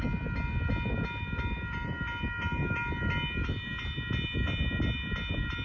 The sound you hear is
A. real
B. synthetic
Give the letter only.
A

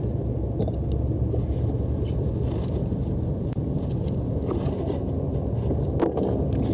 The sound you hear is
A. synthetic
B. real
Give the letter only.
B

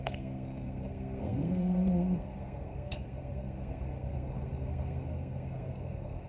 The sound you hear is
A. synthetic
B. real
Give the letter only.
A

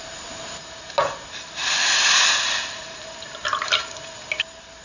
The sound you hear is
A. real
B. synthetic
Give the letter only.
A